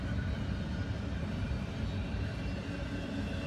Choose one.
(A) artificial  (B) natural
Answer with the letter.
B